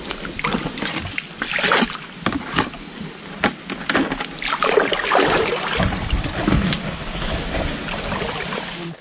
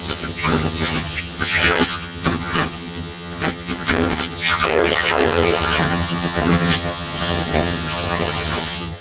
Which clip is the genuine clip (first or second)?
first